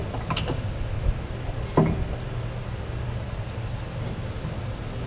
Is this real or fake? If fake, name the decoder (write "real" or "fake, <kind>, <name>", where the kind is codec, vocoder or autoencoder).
real